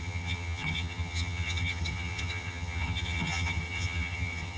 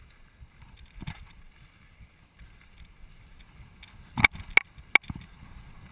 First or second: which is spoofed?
first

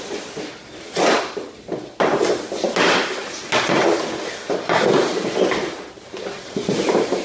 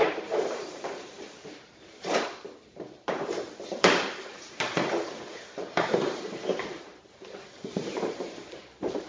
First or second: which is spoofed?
second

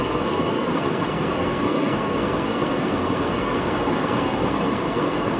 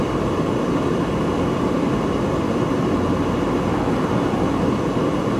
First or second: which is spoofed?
first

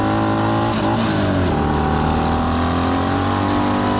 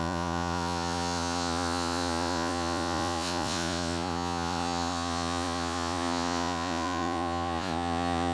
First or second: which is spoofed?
second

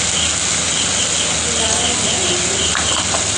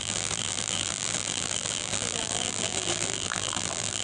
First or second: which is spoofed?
second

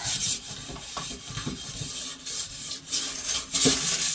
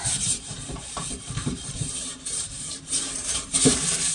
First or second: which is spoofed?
second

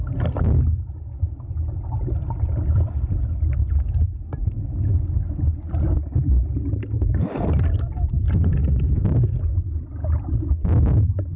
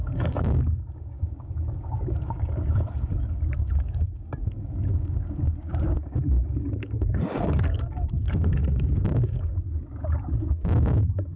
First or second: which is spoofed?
second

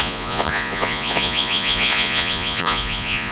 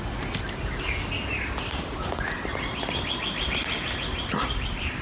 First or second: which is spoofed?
first